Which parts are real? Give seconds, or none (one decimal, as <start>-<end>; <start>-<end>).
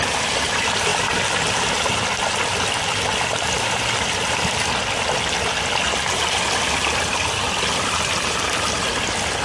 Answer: 0.0-9.4